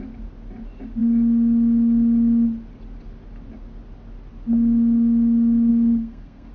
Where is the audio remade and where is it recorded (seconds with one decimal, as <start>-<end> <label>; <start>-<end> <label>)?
0.0-5.7 recorded; 5.7-6.5 remade